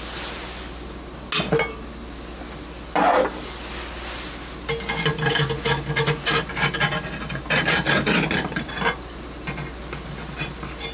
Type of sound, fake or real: real